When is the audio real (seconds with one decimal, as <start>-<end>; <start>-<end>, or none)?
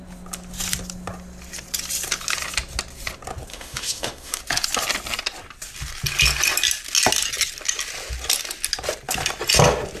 0.0-3.5; 4.4-10.0